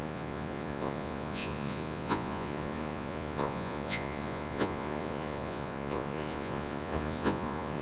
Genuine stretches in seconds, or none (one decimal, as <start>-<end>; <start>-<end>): none